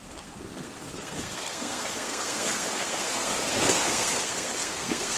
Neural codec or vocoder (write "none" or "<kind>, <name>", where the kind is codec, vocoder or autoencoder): codec, SNAC